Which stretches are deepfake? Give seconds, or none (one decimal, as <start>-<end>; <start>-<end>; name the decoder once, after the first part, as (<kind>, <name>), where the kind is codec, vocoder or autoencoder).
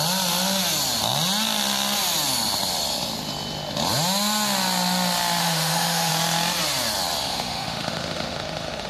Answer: 5.4-6.1 (autoencoder, DAC-VAE); 7.3-8.9